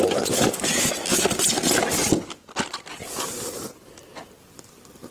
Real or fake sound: real